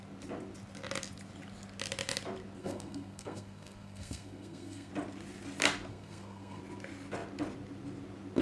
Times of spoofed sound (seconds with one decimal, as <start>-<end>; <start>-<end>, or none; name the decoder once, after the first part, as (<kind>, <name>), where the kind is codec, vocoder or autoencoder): 2.6-4.9 (codec, SNAC); 5.9-6.6